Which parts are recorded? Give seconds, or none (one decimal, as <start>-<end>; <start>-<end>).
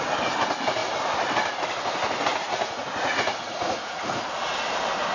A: 0.0-2.3; 4.2-5.1